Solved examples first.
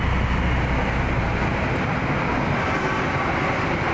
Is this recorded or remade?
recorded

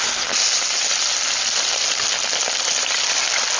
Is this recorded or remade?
recorded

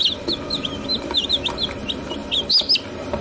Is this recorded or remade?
recorded